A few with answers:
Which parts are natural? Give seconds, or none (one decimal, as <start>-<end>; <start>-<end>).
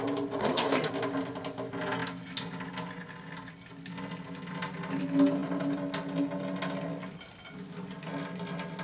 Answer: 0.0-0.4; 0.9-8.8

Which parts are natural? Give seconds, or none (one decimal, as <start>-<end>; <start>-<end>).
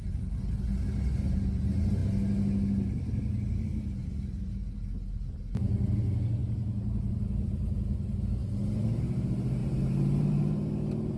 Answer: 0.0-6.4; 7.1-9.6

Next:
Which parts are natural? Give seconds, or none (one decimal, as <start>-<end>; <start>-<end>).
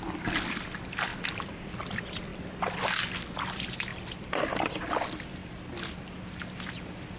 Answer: 0.0-7.2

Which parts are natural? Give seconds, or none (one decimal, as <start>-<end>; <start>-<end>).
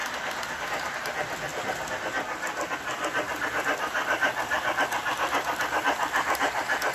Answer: 0.0-6.9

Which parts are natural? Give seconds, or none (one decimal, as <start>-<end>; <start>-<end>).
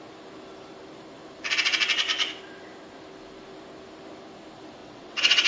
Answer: 0.0-4.8